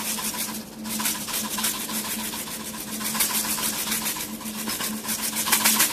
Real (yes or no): no